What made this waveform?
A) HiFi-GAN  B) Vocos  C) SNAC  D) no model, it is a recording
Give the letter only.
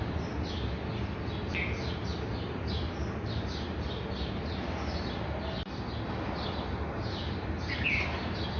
D